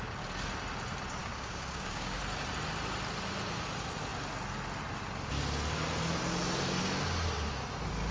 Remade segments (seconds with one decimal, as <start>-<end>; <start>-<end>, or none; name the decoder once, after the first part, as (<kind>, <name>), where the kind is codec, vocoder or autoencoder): 1.2-2.2 (codec, DAC)